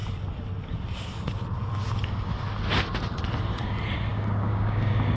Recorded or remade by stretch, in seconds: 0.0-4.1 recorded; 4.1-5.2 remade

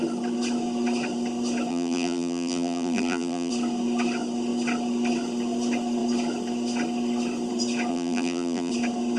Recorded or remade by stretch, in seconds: 0.0-1.7 recorded; 1.7-3.5 remade; 3.5-7.9 recorded; 7.9-8.7 remade; 8.7-9.2 recorded

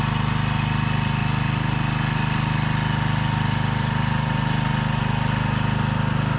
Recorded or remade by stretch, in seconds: 0.0-6.4 recorded

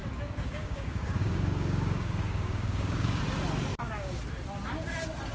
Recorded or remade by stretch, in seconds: 0.0-3.2 remade; 3.2-3.7 recorded; 3.7-4.2 remade; 4.2-5.3 recorded

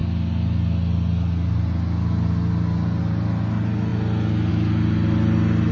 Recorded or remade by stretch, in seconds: 0.0-5.7 recorded

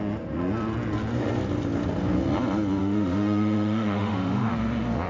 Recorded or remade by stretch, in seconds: 0.0-2.8 recorded; 2.8-4.5 remade; 4.5-5.1 recorded